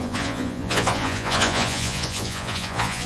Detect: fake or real fake